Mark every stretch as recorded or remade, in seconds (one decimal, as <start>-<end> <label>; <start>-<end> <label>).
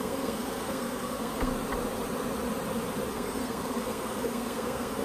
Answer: 0.0-1.5 remade; 1.5-3.1 recorded; 3.1-5.0 remade